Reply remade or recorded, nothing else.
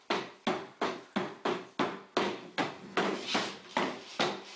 recorded